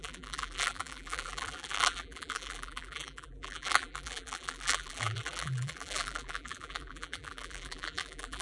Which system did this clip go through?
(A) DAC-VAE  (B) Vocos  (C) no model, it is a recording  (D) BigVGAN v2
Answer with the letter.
D